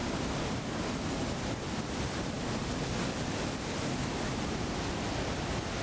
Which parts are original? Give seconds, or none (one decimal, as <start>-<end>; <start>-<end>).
0.0-5.8